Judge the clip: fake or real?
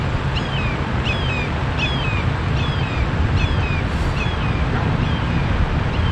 real